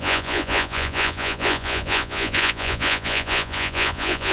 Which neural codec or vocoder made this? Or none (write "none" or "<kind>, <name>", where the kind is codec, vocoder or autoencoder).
vocoder, Vocos